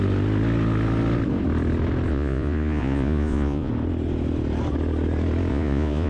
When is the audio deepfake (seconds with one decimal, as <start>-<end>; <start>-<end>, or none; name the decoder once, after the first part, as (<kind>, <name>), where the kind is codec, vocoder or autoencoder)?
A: 2.1-3.7 (vocoder, Vocos); 5.5-6.1